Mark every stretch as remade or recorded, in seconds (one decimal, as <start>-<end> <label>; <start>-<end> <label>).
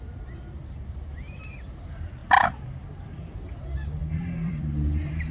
0.0-2.2 recorded; 2.2-3.6 remade; 3.6-4.0 recorded; 4.0-5.3 remade